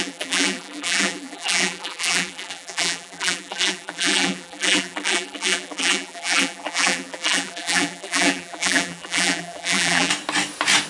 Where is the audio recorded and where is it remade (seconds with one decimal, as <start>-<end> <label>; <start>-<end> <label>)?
0.0-10.1 remade; 10.1-10.9 recorded